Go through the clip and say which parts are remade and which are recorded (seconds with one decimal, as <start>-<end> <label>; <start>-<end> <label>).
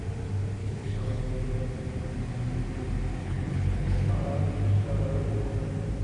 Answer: 0.0-0.6 recorded; 0.6-1.2 remade; 1.2-3.2 recorded; 3.2-4.1 remade; 4.1-6.0 recorded